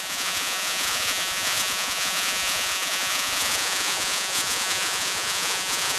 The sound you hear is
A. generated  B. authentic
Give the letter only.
A